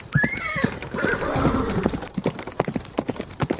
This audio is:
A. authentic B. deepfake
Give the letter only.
B